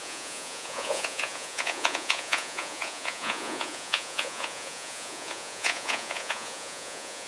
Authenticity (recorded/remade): remade